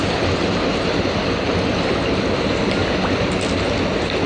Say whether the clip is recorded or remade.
recorded